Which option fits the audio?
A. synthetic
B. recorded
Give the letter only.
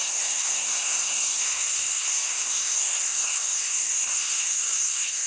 A